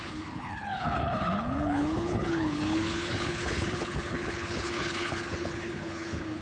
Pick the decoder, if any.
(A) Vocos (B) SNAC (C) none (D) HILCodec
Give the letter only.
D